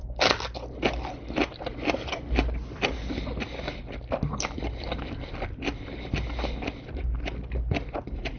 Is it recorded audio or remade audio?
recorded